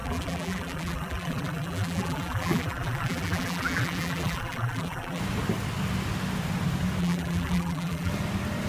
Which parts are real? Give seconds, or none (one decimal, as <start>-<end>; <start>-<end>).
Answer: 5.2-7.0; 8.1-8.7